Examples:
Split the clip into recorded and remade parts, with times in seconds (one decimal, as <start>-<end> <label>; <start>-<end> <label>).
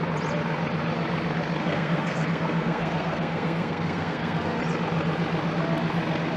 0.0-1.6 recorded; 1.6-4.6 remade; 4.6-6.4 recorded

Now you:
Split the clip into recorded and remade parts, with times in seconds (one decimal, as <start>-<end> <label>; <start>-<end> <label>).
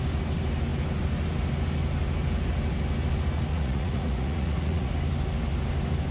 0.0-3.5 recorded; 3.5-4.9 remade; 4.9-6.1 recorded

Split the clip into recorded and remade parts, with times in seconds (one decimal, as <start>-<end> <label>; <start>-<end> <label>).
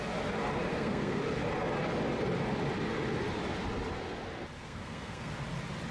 0.0-0.7 recorded; 0.7-1.2 remade; 1.2-4.6 recorded; 4.6-5.3 remade; 5.3-5.9 recorded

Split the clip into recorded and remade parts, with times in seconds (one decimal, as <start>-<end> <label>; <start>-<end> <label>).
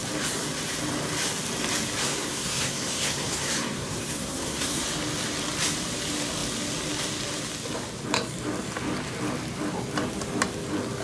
0.0-2.0 recorded; 2.0-4.8 remade; 4.8-11.0 recorded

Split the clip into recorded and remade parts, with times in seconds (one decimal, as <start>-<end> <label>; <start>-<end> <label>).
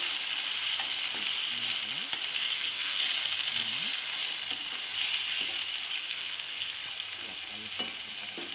0.0-2.4 recorded; 2.4-3.0 remade; 3.0-6.0 recorded; 6.0-6.8 remade; 6.8-8.5 recorded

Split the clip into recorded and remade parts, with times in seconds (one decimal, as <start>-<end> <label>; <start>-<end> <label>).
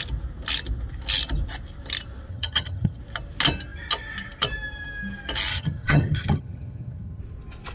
0.0-2.3 recorded; 2.3-3.0 remade; 3.0-5.5 recorded; 5.5-7.2 remade; 7.2-7.7 recorded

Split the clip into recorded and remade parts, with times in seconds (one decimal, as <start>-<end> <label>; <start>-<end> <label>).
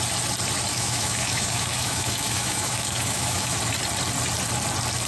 0.0-0.7 recorded; 0.7-3.6 remade; 3.6-5.1 recorded